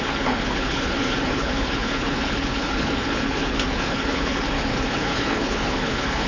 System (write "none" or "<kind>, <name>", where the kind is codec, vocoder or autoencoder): codec, HILCodec